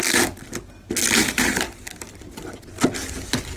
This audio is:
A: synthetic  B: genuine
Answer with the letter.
B